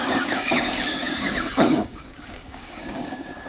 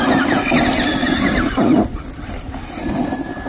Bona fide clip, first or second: second